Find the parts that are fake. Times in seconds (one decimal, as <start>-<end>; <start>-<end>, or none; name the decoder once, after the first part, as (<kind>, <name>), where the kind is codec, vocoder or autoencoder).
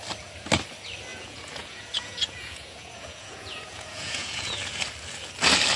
1.1-4.6 (vocoder, Vocos)